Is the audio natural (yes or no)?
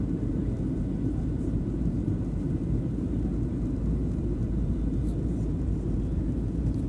no